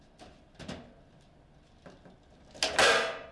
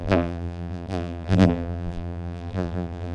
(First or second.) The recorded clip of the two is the first